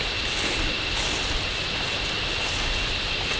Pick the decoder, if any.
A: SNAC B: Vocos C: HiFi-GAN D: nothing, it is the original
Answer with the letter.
D